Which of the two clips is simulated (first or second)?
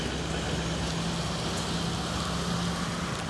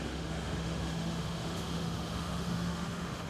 second